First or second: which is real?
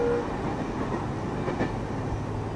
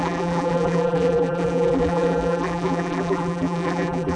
first